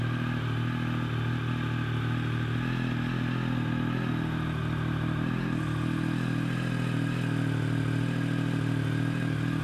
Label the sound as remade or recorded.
recorded